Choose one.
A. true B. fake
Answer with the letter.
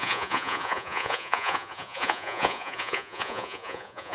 B